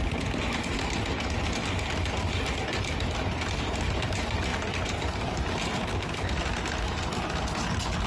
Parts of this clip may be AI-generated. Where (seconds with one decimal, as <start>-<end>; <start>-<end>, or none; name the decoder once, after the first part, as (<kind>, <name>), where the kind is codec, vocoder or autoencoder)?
none

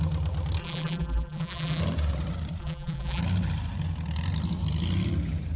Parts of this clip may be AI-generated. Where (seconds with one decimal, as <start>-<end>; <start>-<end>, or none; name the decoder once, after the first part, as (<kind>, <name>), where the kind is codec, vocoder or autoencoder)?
0.6-1.8 (vocoder, BigVGAN v2); 2.6-3.2

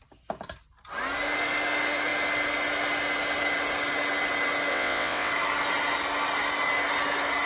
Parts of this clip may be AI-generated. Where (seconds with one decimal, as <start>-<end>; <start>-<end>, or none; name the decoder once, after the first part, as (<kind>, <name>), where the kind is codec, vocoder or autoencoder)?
4.7-5.3 (vocoder, WaveNeXt)

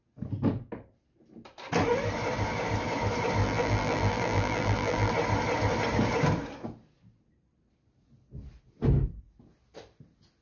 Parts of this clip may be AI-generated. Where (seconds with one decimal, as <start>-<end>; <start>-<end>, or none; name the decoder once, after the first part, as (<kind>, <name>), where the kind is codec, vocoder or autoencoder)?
3.4-5.1 (vocoder, BigVGAN v2)

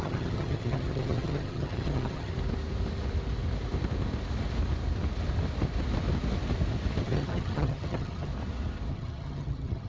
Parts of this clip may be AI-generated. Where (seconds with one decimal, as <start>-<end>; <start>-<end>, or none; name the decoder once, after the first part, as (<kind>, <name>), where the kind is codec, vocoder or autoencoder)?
0.0-2.3 (vocoder, HiFi-GAN); 7.0-8.3; 8.9-9.9

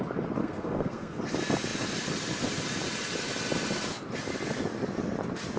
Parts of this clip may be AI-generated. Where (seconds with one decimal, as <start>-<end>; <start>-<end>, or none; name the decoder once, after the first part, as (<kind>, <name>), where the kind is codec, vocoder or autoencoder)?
0.4-1.2 (codec, SNAC)

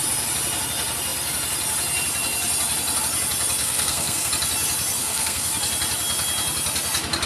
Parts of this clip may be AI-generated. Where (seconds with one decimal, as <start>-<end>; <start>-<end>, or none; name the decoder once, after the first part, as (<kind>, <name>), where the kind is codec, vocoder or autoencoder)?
3.6-4.3 (codec, SNAC); 5.0-5.6

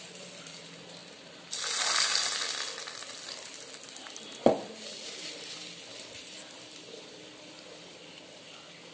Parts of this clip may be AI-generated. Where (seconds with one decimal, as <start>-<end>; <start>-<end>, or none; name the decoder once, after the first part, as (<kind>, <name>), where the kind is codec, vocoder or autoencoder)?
none